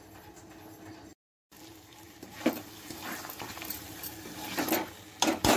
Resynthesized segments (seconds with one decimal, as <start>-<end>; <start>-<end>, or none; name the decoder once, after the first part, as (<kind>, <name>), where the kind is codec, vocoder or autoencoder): 1.1-4.5 (vocoder, BigVGAN v2)